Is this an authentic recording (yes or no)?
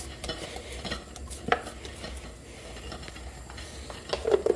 yes